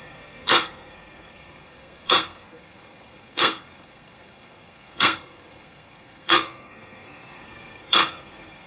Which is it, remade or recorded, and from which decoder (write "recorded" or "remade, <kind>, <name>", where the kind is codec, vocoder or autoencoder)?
remade, codec, SNAC